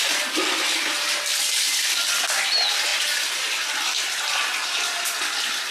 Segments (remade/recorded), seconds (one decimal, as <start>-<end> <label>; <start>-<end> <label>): 0.0-1.3 recorded; 1.3-2.2 remade; 2.2-4.6 recorded; 4.6-5.2 remade; 5.2-5.7 recorded